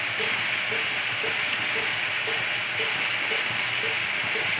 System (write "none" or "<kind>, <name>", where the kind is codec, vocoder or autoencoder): none